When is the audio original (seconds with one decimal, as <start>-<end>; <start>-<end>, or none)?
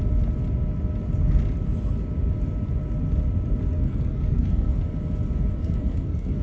0.0-3.7; 4.8-5.6